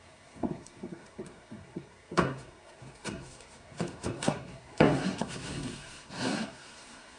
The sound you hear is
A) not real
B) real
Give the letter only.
A